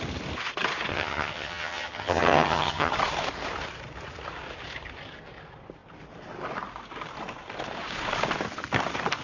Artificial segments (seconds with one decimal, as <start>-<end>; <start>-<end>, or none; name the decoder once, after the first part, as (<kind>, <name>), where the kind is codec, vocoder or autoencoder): 0.9-2.9 (vocoder, HiFi-GAN)